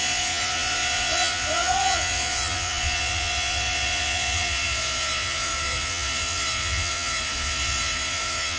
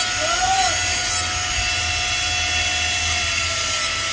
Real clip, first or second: second